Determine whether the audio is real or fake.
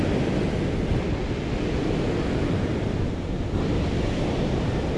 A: real